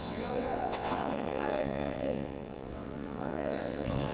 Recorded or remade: remade